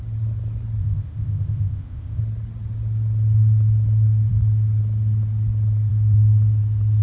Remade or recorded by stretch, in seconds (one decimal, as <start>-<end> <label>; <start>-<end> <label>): 0.0-0.8 recorded; 0.8-2.2 remade; 2.2-7.0 recorded